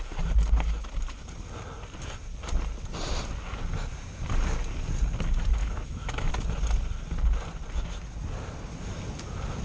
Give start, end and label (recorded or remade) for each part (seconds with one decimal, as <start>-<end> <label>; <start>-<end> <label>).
0.0-5.6 recorded; 5.6-6.3 remade; 6.3-9.6 recorded